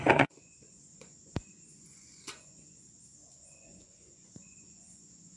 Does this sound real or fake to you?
fake